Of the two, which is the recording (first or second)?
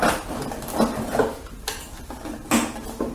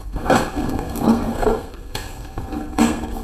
first